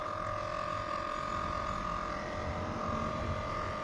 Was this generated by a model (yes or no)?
yes